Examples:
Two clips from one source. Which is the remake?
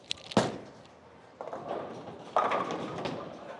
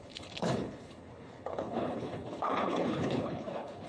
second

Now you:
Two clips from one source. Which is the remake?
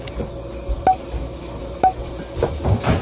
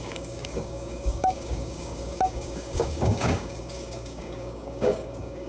second